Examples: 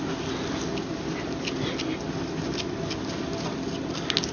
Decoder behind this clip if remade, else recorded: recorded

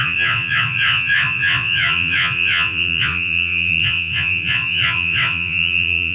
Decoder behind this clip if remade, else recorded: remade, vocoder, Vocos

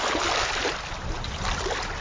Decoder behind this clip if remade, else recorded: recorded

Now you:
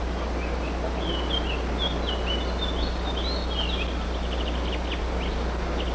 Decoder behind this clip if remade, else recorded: recorded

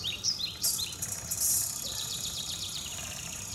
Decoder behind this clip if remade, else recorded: remade, vocoder, BigVGAN v2